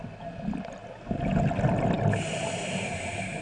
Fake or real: real